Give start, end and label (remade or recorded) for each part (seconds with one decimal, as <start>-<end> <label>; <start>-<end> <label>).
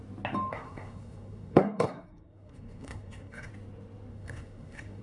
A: 0.0-0.5 recorded; 0.5-3.5 remade; 3.5-4.1 recorded; 4.1-5.0 remade